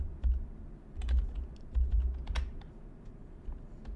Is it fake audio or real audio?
real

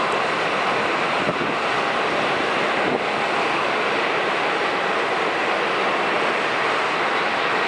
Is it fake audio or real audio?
fake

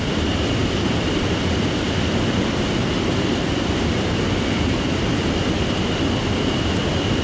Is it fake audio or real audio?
fake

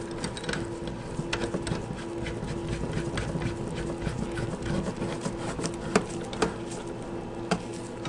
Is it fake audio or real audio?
real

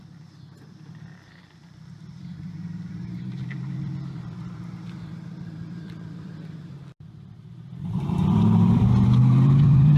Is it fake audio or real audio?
fake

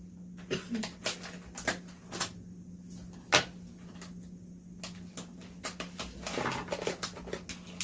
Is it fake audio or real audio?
real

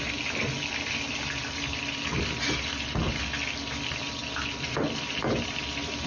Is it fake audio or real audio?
real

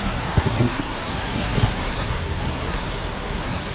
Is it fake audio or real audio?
fake